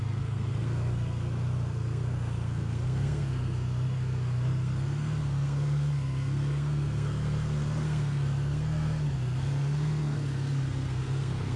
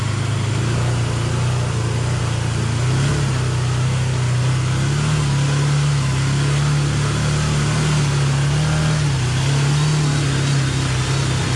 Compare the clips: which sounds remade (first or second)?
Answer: first